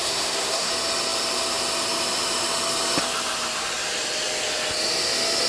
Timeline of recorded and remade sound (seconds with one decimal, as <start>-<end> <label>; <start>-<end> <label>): 0.0-0.7 remade; 0.7-5.5 recorded